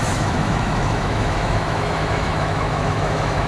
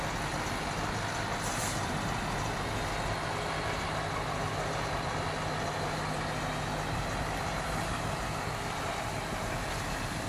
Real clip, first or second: second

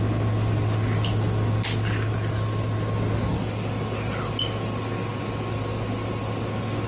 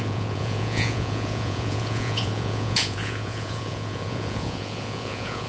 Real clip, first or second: first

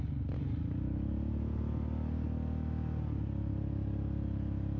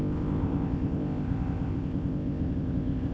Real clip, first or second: first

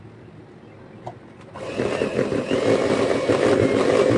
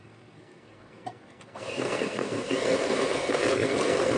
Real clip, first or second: first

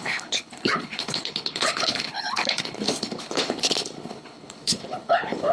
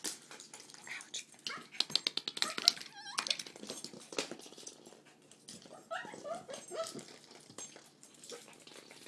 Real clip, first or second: second